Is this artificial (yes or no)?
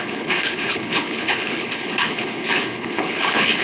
yes